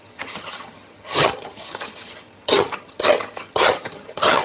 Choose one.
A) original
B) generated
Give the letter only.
B